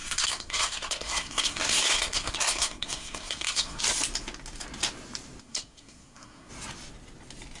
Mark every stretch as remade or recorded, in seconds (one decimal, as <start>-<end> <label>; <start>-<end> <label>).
0.0-3.8 remade; 3.8-5.4 recorded; 5.4-6.5 remade; 6.5-7.6 recorded